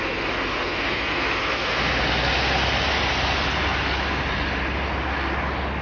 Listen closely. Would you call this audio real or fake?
real